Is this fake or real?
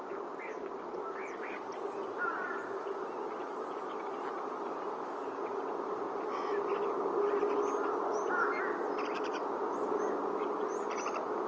real